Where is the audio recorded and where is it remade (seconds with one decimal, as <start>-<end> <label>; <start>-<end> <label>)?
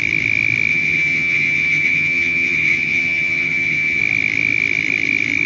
0.0-0.7 recorded; 0.7-4.0 remade; 4.0-5.5 recorded